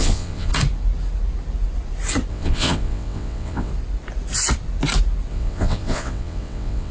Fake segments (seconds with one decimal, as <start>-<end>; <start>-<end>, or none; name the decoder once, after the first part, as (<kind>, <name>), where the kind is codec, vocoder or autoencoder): 0.0-0.5 (vocoder, WaveNeXt); 2.3-3.7; 5.3-6.9